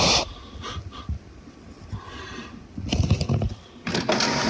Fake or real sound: real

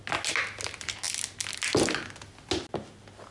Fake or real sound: real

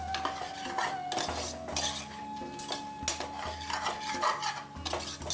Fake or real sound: real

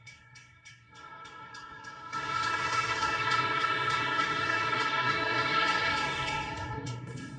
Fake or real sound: fake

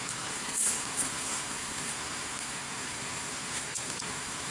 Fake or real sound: fake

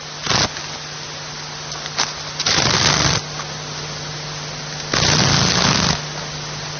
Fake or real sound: real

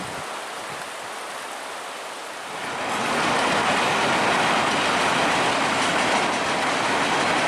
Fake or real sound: real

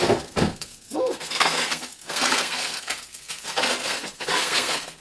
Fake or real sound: fake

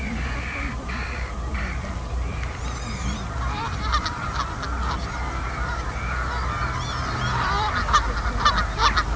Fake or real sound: real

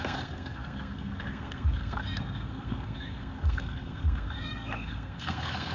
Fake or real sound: fake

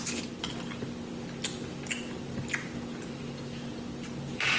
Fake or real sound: real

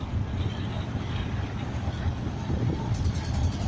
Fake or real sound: real